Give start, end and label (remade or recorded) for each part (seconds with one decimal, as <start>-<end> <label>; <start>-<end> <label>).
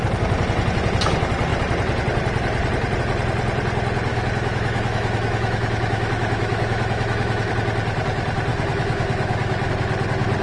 0.0-4.1 recorded; 4.1-7.5 remade; 7.5-8.5 recorded; 8.5-9.7 remade; 9.7-10.4 recorded